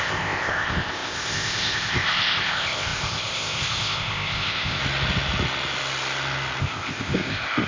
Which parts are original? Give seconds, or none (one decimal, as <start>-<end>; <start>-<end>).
4.8-6.6

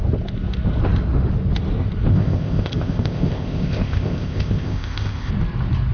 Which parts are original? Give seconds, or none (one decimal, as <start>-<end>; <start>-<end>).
0.0-2.1; 5.3-5.9

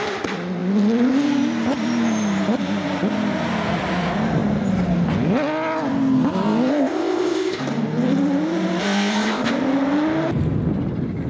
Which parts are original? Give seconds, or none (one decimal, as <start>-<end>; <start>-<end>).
0.0-6.7; 7.6-8.8; 9.5-11.3

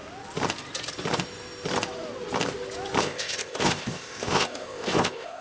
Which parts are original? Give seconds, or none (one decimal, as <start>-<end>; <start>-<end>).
0.0-3.0

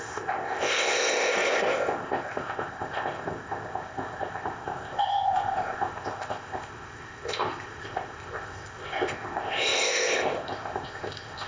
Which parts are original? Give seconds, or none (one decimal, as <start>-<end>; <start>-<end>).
none

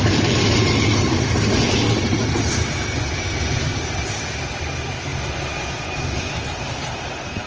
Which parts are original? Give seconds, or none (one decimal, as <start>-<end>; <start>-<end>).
0.0-7.5

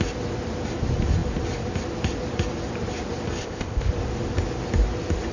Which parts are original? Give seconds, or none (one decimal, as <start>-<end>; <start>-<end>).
0.0-3.4; 3.9-5.3